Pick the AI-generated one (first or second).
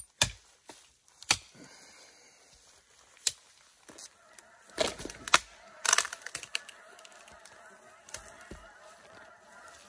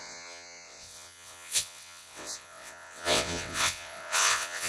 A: second